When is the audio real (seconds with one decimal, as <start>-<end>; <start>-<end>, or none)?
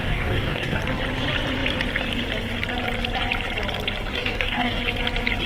0.8-4.1; 4.8-5.5